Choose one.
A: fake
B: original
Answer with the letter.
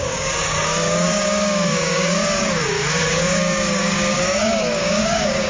A